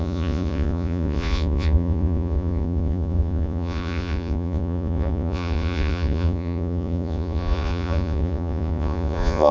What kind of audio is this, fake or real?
fake